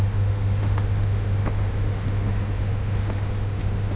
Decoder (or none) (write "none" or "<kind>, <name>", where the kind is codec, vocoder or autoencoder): autoencoder, DAC-VAE